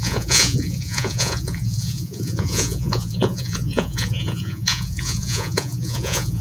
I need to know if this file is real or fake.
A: fake